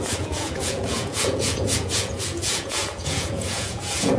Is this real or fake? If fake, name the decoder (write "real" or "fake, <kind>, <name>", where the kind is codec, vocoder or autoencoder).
fake, vocoder, Vocos